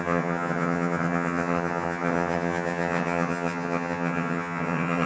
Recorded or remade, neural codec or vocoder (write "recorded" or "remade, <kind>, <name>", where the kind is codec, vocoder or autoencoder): remade, vocoder, HiFi-GAN